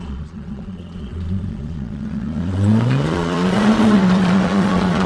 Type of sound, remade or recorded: remade